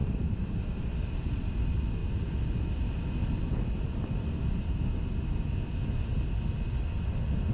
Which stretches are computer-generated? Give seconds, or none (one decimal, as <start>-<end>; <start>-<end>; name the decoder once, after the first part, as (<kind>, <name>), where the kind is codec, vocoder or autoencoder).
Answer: 0.0-2.0 (vocoder, BigVGAN v2); 6.4-7.5

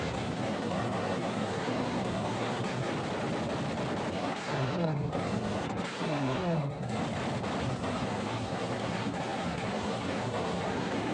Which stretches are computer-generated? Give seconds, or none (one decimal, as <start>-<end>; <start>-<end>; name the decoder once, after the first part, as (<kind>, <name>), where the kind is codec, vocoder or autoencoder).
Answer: 0.0-2.9 (codec, SNAC); 4.1-7.0; 7.6-11.1

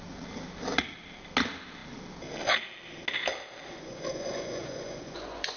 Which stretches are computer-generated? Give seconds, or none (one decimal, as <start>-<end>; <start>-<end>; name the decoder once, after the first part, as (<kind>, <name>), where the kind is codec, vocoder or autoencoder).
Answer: 3.6-5.6 (vocoder, Vocos)

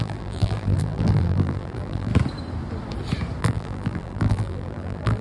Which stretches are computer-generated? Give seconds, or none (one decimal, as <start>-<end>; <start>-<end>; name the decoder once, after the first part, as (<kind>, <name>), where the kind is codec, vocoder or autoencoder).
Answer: 0.0-2.1 (vocoder, BigVGAN v2); 3.4-5.2

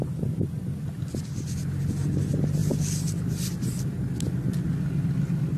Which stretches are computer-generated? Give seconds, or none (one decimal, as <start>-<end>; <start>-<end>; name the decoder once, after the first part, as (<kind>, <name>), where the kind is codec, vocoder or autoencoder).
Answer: none

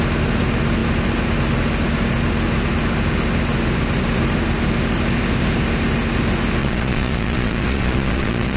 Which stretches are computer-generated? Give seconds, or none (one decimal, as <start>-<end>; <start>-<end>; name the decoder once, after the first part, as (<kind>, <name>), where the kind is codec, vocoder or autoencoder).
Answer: 6.6-8.6 (vocoder, Vocos)

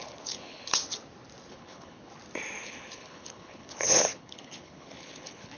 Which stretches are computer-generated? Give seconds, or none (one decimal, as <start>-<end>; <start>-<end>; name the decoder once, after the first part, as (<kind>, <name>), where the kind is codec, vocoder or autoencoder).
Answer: 0.0-0.8 (codec, HILCodec); 1.5-2.1; 2.6-5.6